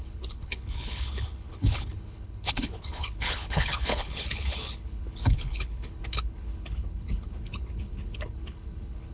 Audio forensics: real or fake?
fake